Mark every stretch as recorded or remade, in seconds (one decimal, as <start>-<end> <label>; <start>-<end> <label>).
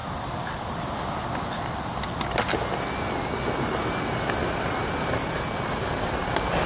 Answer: 0.0-6.7 recorded